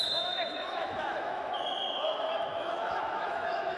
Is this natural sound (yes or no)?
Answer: no